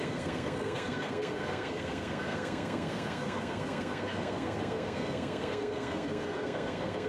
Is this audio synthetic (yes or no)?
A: yes